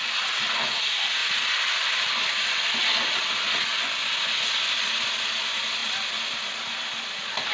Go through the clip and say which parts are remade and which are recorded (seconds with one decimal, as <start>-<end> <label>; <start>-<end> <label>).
0.0-1.2 recorded; 1.2-2.3 remade; 2.3-7.5 recorded